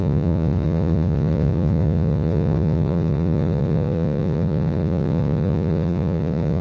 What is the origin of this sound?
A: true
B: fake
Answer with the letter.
B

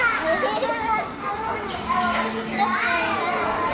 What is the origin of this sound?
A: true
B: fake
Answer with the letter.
A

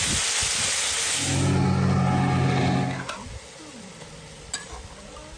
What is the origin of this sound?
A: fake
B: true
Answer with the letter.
B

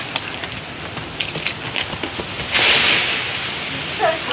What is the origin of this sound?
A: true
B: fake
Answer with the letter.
A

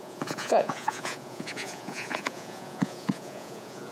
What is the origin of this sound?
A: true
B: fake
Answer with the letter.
B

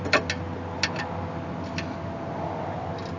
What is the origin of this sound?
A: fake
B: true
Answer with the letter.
B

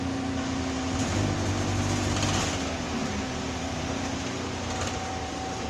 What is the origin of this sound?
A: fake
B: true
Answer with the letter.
B